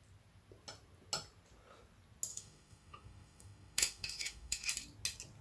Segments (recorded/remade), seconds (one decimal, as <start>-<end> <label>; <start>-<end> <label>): 0.0-2.3 recorded; 2.3-4.7 remade; 4.7-5.4 recorded